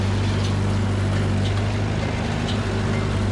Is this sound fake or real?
real